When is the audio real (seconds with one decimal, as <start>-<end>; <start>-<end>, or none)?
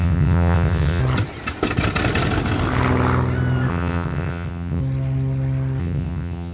1.0-3.7; 4.8-5.8